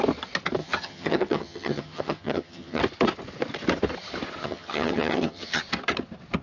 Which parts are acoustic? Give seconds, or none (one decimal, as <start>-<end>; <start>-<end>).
0.0-0.6; 2.8-4.4; 5.6-6.4